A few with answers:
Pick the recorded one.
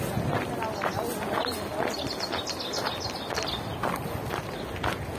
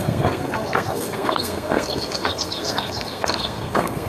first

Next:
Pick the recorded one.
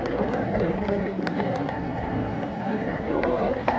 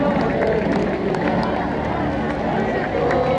second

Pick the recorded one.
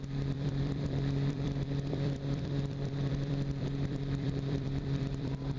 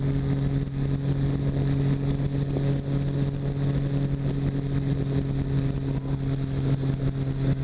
second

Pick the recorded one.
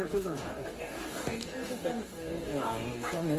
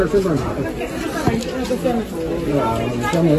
second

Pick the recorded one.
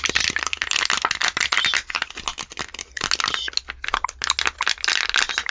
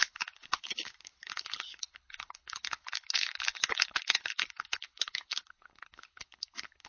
first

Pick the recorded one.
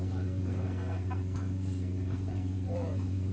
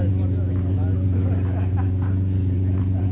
second